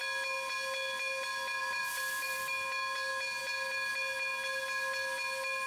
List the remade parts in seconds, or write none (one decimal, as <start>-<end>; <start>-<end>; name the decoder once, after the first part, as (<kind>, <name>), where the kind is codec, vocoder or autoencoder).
1.6-2.5 (vocoder, BigVGAN v2)